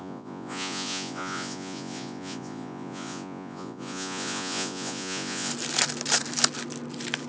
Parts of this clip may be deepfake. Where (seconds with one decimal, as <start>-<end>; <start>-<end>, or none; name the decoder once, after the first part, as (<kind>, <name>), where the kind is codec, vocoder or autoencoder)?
0.0-5.5 (vocoder, Vocos)